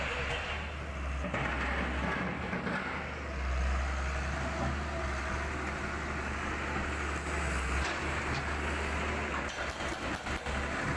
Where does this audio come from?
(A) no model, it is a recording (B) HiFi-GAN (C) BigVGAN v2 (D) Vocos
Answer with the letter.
A